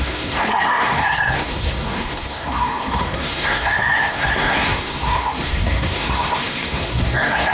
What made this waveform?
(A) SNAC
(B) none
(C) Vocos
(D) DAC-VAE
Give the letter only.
A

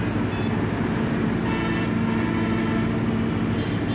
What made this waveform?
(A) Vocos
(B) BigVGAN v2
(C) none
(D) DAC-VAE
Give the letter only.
C